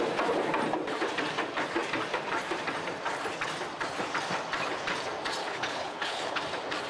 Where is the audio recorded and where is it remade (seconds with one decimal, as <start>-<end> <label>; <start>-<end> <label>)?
0.0-5.4 recorded; 5.4-6.4 remade; 6.4-6.9 recorded